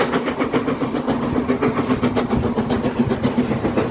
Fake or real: real